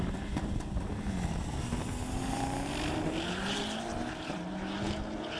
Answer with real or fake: real